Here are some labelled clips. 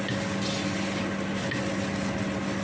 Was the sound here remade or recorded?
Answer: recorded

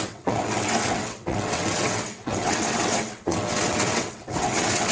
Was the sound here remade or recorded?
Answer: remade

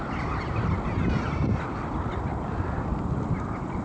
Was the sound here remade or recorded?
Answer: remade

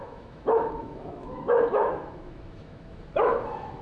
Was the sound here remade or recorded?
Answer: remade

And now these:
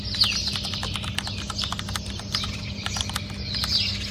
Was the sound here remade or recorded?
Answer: recorded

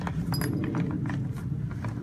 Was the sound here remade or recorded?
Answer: recorded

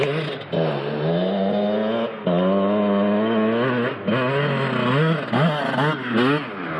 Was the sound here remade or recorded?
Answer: recorded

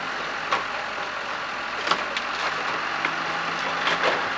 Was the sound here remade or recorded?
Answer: recorded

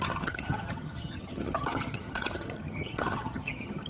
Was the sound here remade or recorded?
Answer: remade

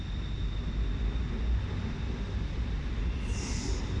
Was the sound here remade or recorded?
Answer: recorded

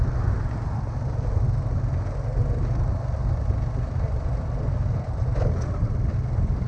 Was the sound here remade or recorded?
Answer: recorded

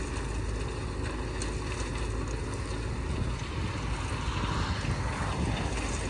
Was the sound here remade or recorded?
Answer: recorded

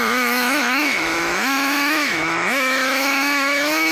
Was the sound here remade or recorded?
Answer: remade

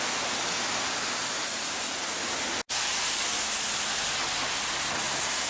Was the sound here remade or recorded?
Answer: recorded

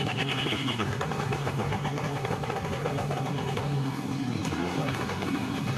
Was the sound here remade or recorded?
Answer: remade